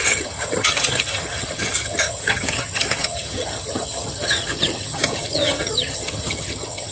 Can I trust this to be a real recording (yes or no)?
no